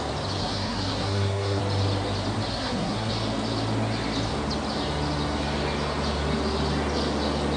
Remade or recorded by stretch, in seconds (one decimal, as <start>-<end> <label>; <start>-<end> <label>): 0.0-0.4 recorded; 0.4-1.6 remade; 1.6-2.5 recorded; 2.5-3.1 remade; 3.1-7.6 recorded